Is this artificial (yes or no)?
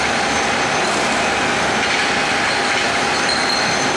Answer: no